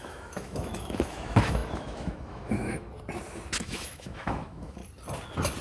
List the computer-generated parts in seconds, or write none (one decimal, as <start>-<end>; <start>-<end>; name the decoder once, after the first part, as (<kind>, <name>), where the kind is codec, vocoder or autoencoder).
0.0-2.9 (autoencoder, DAC-VAE); 3.6-4.8